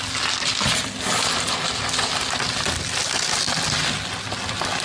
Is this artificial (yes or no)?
no